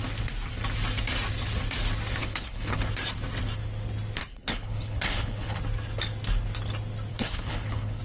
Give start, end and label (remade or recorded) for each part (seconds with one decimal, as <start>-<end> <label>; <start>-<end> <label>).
0.0-2.2 recorded; 2.2-2.9 remade; 2.9-4.3 recorded; 4.3-5.6 remade; 5.6-7.1 recorded; 7.1-8.0 remade